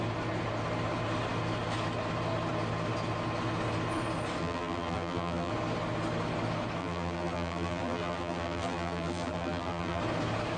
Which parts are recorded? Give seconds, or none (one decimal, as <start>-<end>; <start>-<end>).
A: 0.0-4.4; 5.5-6.8; 10.0-10.6